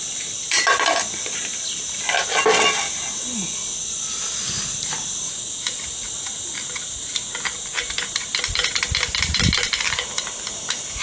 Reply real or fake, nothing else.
real